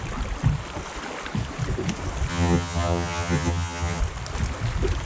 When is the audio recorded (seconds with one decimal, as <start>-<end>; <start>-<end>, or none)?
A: 0.0-2.3; 4.0-5.0